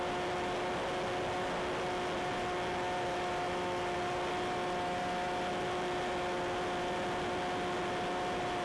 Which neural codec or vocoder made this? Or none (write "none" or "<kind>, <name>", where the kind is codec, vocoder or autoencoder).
none